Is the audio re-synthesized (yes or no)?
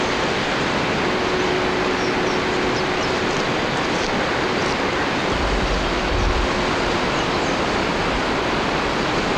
no